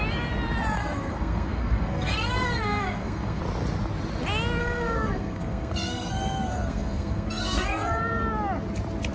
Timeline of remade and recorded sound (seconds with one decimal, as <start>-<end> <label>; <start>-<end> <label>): 0.0-0.8 recorded; 0.8-3.4 remade; 3.4-4.6 recorded; 4.6-8.0 remade; 8.0-9.1 recorded